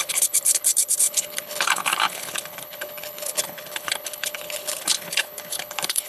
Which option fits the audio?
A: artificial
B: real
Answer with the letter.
A